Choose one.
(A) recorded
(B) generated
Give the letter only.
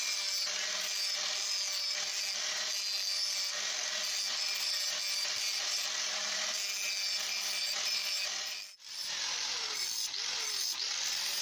A